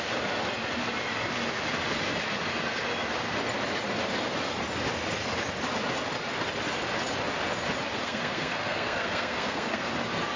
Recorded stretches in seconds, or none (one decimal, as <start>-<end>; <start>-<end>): 0.0-8.0; 9.9-10.4